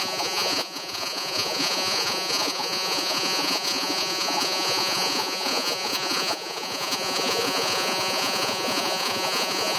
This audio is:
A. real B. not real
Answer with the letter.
B